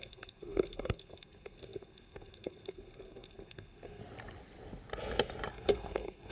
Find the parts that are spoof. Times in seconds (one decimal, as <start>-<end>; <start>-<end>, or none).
0.0-4.0; 5.5-6.3